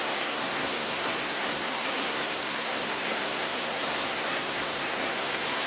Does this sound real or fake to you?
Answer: fake